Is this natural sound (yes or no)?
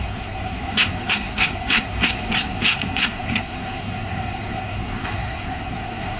no